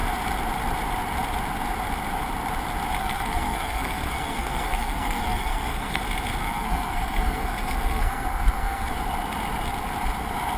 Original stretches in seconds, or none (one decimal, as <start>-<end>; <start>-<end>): 0.0-3.0; 6.0-6.4; 8.9-10.6